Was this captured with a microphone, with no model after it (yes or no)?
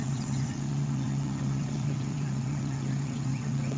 no